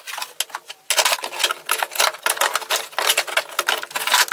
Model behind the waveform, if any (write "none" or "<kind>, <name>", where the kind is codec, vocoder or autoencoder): none